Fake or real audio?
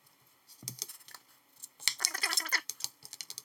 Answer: real